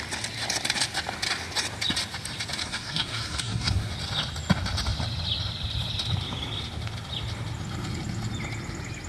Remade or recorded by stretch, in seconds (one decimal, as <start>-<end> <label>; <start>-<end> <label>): 0.0-2.6 recorded; 2.6-3.9 remade; 3.9-9.1 recorded